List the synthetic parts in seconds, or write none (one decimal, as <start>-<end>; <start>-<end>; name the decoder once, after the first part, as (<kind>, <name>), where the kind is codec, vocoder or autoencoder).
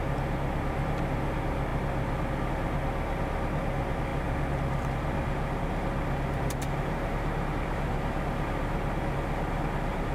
none